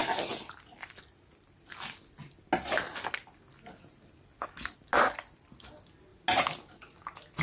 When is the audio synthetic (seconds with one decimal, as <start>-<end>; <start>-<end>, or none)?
none